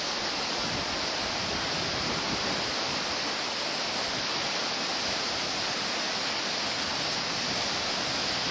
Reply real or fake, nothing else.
real